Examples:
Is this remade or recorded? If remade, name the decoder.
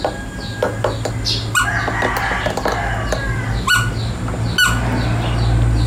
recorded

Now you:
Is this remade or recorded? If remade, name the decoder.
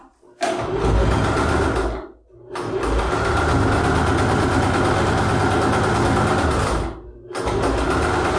recorded